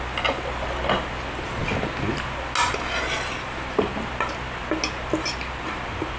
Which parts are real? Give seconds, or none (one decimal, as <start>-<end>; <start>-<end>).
0.0-6.2